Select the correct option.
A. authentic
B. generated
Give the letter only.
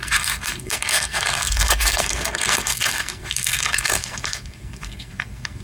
B